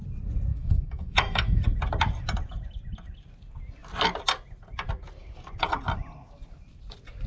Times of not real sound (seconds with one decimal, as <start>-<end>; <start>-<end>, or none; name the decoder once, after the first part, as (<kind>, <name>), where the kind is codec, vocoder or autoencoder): 0.5-1.6 (autoencoder, DAC-VAE)